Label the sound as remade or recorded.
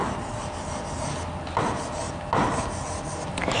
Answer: recorded